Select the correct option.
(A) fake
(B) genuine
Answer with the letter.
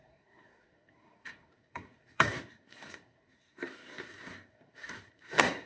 A